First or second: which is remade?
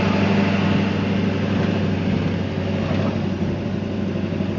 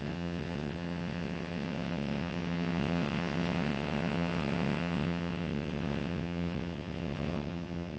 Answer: second